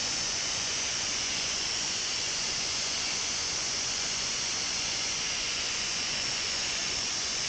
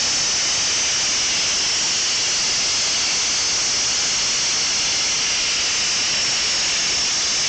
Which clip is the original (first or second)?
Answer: second